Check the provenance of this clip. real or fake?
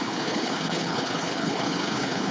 fake